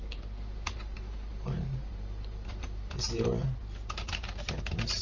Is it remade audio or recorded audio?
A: recorded